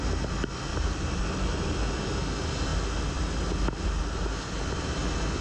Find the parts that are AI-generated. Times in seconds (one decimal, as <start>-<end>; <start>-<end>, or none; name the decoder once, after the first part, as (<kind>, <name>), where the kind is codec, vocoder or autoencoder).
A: 0.7-2.0 (vocoder, BigVGAN v2)

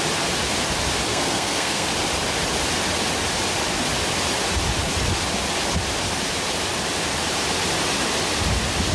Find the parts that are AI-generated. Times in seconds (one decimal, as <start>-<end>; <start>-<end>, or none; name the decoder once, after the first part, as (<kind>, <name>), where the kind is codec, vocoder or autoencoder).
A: 1.1-1.9 (codec, SNAC)

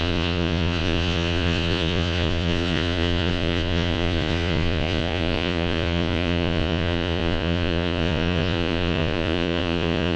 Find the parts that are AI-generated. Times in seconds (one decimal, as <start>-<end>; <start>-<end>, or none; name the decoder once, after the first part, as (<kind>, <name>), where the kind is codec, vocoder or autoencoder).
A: 0.0-10.2 (vocoder, Vocos)

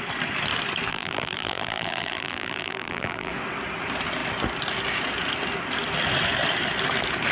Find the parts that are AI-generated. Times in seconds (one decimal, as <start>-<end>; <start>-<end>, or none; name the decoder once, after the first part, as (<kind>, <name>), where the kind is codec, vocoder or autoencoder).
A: 0.9-3.3 (vocoder, BigVGAN v2)

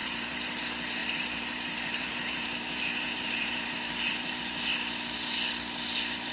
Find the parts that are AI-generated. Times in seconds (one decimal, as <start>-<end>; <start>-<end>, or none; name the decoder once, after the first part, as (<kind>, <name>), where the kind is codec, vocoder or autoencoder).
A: 0.0-0.6 (vocoder, BigVGAN v2); 1.0-4.4